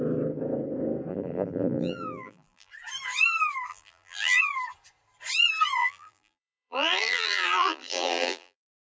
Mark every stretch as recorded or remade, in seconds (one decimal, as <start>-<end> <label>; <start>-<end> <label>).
0.0-1.1 recorded; 1.1-2.7 remade; 2.7-3.7 recorded; 3.7-4.4 remade; 4.4-5.8 recorded; 5.8-8.8 remade